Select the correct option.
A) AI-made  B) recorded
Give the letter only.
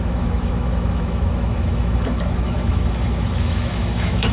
A